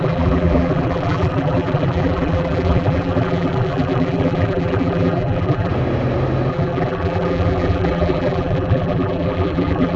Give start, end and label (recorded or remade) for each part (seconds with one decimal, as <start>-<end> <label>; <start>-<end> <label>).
0.0-5.7 remade; 5.7-6.5 recorded; 6.5-10.0 remade